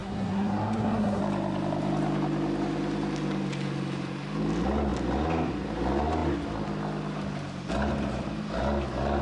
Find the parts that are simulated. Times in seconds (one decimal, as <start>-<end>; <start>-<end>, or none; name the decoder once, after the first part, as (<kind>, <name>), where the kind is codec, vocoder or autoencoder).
0.0-1.2 (codec, SNAC)